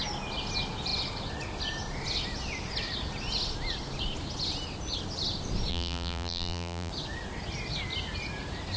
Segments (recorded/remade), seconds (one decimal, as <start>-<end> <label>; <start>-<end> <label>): 0.0-5.7 recorded; 5.7-6.9 remade; 6.9-8.8 recorded